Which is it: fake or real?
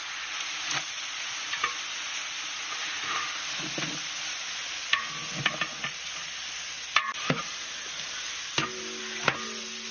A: real